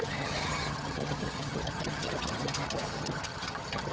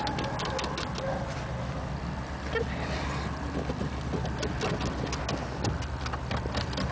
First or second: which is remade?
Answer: first